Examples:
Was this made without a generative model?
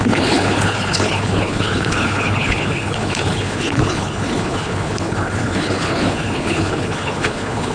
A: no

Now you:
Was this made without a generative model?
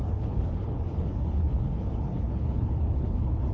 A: no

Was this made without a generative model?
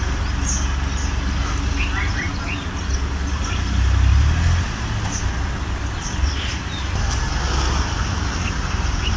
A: yes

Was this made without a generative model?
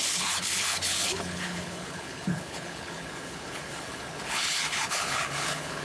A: no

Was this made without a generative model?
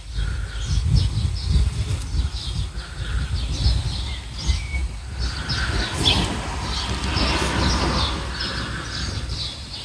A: yes